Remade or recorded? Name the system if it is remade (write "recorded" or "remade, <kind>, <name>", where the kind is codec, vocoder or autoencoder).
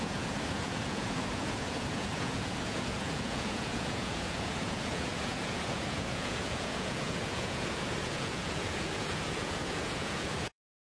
remade, vocoder, Vocos